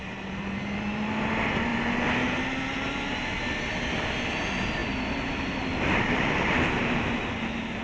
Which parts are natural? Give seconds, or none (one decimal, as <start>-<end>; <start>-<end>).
0.0-7.8